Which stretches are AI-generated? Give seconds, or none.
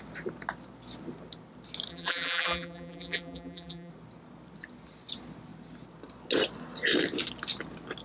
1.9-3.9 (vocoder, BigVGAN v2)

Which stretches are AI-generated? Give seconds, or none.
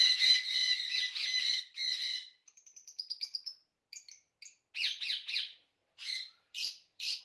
0.6-1.6 (vocoder, BigVGAN v2); 2.1-4.4; 5.8-7.2